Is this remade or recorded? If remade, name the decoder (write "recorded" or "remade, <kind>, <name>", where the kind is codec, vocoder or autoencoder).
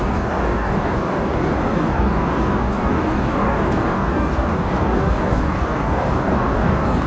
remade, codec, DAC